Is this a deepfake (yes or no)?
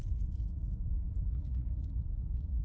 yes